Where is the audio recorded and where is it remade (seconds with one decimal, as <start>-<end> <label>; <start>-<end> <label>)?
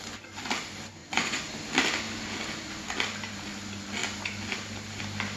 0.0-1.0 recorded; 1.0-1.5 remade; 1.5-5.4 recorded